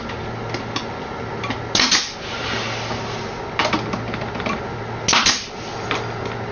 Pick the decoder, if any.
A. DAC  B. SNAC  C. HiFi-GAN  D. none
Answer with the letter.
D